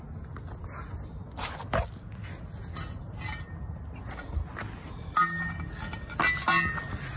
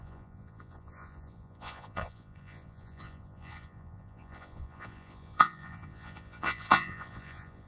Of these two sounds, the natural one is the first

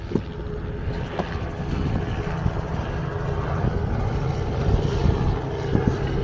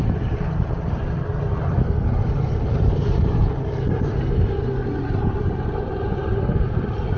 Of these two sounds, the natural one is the first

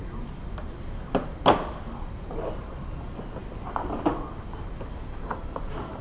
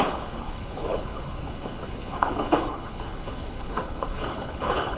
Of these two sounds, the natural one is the first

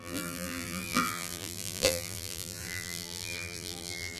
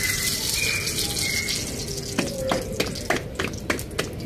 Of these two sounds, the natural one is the second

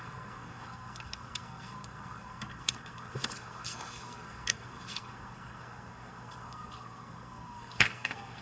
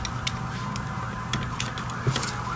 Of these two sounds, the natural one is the second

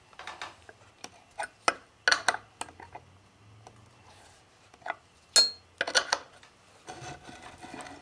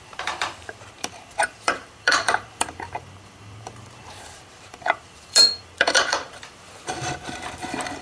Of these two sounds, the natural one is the first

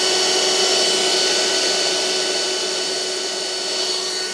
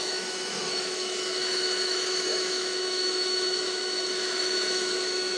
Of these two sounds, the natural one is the first